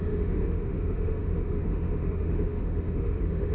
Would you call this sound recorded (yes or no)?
no